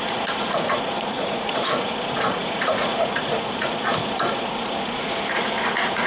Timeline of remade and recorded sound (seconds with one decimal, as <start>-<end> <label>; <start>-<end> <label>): 0.0-6.1 remade